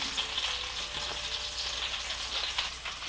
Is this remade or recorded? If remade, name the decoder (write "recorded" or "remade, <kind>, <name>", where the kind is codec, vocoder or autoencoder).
recorded